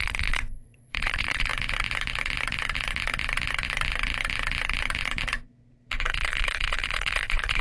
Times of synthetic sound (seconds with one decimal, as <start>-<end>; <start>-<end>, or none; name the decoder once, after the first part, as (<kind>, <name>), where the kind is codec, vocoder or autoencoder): 0.0-1.5 (vocoder, Vocos); 6.1-7.6